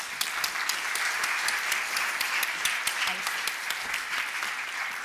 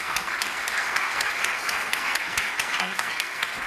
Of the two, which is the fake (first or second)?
second